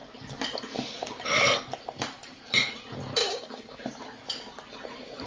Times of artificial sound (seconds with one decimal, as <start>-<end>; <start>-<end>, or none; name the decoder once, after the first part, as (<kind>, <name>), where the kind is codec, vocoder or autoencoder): 3.2-3.8 (codec, DAC)